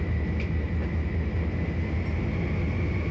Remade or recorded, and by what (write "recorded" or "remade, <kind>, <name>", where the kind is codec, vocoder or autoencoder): recorded